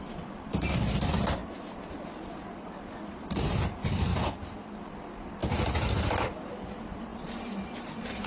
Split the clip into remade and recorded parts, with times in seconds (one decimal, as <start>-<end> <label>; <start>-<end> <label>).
0.0-1.4 remade; 1.4-1.9 recorded; 1.9-4.1 remade; 4.1-4.8 recorded; 4.8-5.4 remade; 5.4-5.9 recorded; 5.9-7.1 remade; 7.1-8.3 recorded